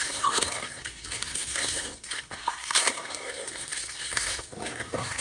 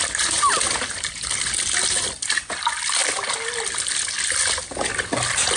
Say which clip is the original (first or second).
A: second